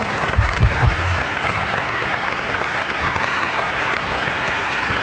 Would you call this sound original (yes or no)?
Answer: no